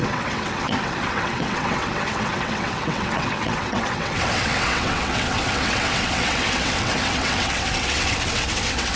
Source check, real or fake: fake